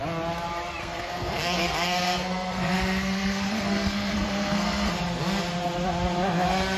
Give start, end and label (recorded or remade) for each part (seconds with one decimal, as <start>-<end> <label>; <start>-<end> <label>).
0.0-0.8 recorded; 0.8-4.9 remade; 4.9-6.8 recorded